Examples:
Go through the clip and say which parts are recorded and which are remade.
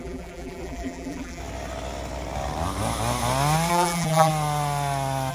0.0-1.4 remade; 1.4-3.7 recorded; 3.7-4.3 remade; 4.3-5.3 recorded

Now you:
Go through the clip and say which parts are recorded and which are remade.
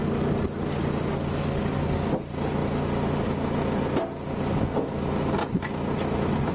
0.0-6.5 recorded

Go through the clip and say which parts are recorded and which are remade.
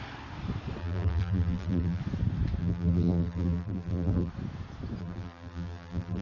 0.0-0.8 recorded; 0.8-2.0 remade; 2.0-2.6 recorded; 2.6-4.3 remade; 4.3-5.0 recorded; 5.0-6.2 remade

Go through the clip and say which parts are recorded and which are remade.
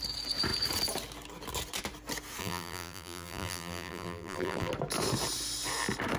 0.0-2.4 recorded; 2.4-4.7 remade; 4.7-6.2 recorded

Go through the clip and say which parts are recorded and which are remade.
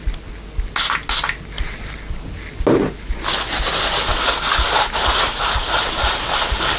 0.0-6.8 recorded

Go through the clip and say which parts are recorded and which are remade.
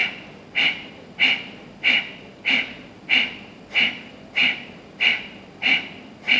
0.0-3.8 remade; 3.8-4.4 recorded; 4.4-6.4 remade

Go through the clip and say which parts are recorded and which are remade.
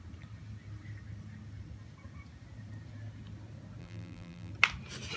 0.0-3.8 recorded; 3.8-4.5 remade; 4.5-5.2 recorded